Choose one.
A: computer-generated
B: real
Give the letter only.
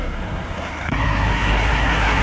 A